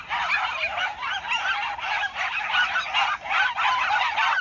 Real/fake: fake